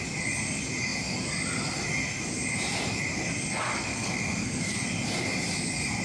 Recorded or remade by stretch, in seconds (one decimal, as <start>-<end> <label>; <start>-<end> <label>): 0.0-3.9 recorded; 3.9-4.7 remade; 4.7-6.0 recorded